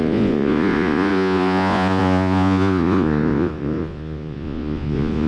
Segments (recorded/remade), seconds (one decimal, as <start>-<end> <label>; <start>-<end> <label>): 0.0-5.3 remade